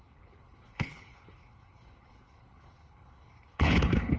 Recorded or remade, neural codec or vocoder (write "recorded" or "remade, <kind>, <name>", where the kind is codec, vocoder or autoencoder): remade, codec, HILCodec